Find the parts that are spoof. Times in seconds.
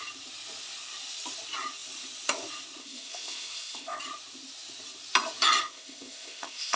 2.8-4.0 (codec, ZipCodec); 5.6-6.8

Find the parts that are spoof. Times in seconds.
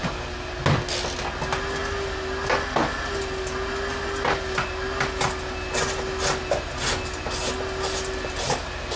none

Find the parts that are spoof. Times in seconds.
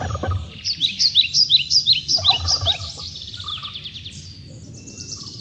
0.0-3.5 (vocoder, BigVGAN v2); 4.9-5.4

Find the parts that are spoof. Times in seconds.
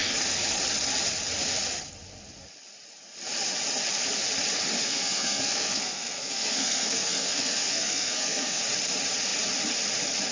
4.8-8.6 (codec, SNAC)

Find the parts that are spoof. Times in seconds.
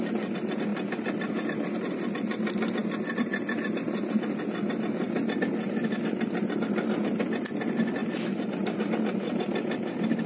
none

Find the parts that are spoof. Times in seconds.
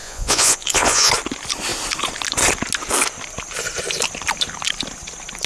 0.0-1.1 (vocoder, Vocos)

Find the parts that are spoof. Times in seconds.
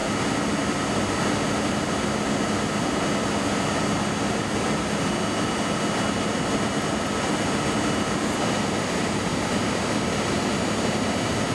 none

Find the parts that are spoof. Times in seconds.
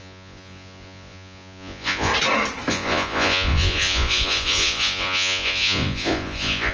0.0-2.1 (vocoder, Vocos); 2.7-6.7